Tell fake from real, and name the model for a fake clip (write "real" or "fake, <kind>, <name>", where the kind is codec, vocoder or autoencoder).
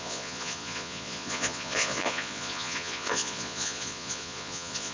fake, vocoder, Vocos